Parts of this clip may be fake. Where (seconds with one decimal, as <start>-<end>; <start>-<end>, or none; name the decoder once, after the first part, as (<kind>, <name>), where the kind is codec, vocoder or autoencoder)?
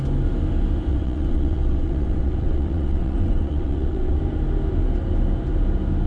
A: 0.9-4.2 (vocoder, WaveNeXt)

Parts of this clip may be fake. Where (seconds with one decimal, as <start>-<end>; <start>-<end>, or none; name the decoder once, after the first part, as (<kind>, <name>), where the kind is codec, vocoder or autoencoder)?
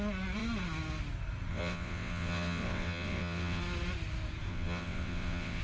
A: 1.5-3.6 (vocoder, WaveNeXt); 4.5-5.6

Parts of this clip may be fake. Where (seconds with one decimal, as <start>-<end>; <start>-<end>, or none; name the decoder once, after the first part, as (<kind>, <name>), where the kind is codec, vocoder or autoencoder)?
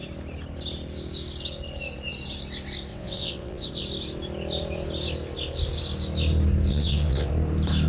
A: 2.9-3.7 (vocoder, WaveNeXt); 6.7-7.3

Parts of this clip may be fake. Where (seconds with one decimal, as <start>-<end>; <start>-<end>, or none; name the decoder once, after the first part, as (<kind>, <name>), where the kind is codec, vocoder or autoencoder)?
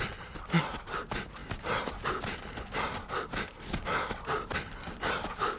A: none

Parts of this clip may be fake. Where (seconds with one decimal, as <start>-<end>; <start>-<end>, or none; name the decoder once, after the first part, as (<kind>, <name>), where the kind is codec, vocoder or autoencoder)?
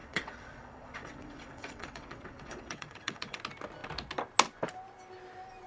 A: 0.0-3.4 (vocoder, WaveNeXt)